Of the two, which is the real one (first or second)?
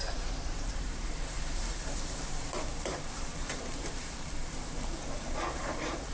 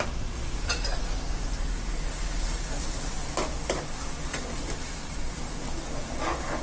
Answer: second